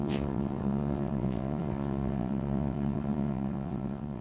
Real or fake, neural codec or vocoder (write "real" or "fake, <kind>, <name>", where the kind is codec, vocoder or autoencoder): fake, vocoder, WaveNeXt